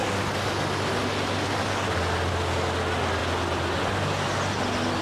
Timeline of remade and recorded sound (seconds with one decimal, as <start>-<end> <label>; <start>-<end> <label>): 0.0-5.0 recorded

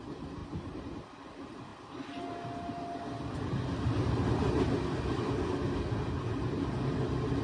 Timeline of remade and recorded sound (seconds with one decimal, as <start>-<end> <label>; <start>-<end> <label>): 0.0-0.4 recorded; 0.4-1.1 remade; 1.1-7.4 recorded

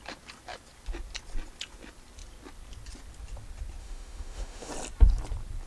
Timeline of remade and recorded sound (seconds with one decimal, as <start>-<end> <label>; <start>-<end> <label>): 0.0-3.8 recorded; 3.8-4.7 remade; 4.7-5.7 recorded

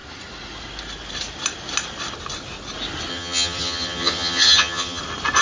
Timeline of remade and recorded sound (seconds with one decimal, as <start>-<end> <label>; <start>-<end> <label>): 0.0-3.1 recorded; 3.1-5.0 remade; 5.0-5.4 recorded

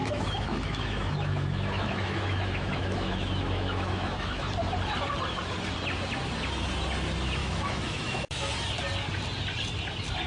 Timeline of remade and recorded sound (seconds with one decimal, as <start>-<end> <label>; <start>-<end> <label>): 0.0-4.5 remade; 4.5-7.4 recorded; 7.4-8.5 remade; 8.5-10.3 recorded

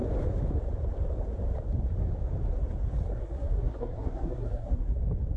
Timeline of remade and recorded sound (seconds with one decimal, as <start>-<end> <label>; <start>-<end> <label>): 0.0-3.1 recorded; 3.1-5.0 remade; 5.0-5.4 recorded